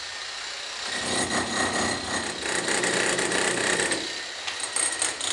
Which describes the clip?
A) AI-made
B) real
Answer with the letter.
B